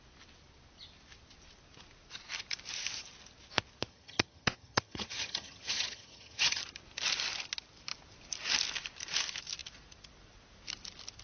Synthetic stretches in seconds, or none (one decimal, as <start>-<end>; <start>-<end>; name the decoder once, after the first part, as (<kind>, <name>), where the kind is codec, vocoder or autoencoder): 3.9-6.6 (vocoder, HiFi-GAN)